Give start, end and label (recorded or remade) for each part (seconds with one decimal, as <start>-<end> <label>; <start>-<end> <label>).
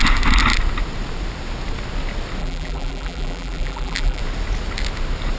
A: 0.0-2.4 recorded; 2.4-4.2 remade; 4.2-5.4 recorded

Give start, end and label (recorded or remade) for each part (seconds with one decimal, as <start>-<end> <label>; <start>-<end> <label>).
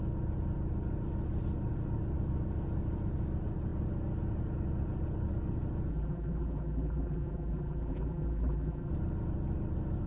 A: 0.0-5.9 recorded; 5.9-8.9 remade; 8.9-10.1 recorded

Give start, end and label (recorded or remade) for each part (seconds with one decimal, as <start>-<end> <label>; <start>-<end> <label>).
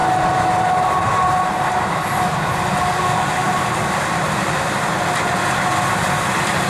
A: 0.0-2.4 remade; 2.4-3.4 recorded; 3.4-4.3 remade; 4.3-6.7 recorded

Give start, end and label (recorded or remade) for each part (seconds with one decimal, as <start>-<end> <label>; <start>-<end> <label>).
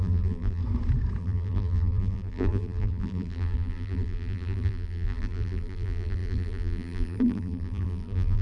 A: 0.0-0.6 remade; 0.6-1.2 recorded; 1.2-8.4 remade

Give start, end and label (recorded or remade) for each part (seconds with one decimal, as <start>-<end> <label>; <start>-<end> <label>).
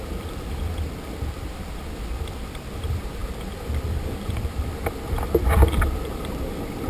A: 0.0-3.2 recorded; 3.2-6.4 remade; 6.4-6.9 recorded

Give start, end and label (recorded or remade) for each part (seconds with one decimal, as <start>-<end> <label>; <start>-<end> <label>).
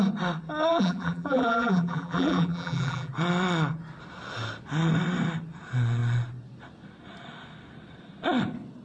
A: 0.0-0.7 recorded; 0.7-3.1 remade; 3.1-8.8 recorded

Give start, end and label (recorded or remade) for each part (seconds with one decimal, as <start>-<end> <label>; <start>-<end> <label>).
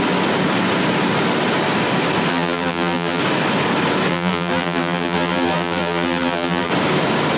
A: 0.0-2.3 recorded; 2.3-3.2 remade; 3.2-4.1 recorded; 4.1-6.7 remade; 6.7-7.4 recorded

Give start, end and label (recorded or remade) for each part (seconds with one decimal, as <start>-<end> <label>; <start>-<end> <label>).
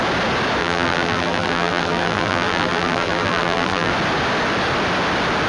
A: 0.0-0.6 recorded; 0.6-3.9 remade; 3.9-5.5 recorded